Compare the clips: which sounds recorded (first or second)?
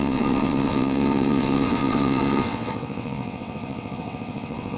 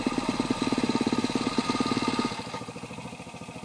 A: second